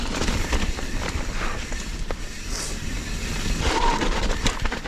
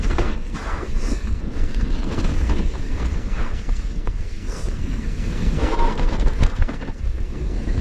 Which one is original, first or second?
first